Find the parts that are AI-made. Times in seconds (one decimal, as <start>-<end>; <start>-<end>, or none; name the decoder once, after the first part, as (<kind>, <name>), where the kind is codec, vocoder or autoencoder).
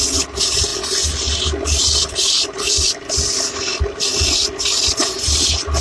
none